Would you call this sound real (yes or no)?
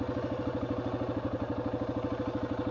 yes